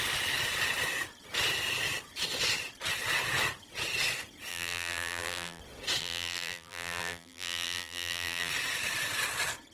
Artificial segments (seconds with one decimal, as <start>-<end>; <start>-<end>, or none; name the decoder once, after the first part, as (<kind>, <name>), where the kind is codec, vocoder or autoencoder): 4.5-5.6 (vocoder, BigVGAN v2); 6.0-8.5